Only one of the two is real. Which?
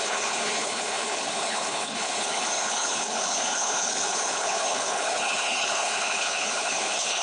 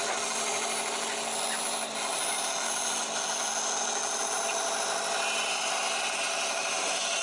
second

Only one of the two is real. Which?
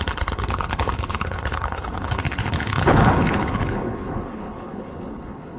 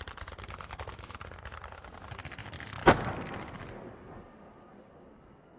second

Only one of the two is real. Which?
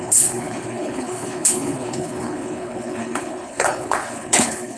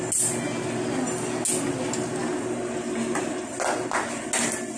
second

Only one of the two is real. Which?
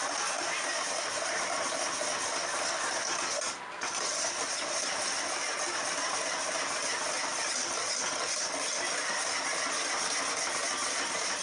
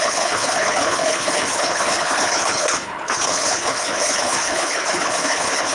first